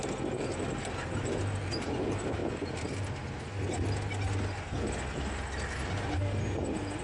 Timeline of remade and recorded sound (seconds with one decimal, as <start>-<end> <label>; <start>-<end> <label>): 0.0-7.0 recorded